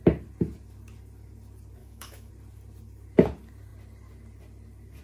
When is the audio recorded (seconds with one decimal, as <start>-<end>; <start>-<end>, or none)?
0.0-1.8; 2.3-5.0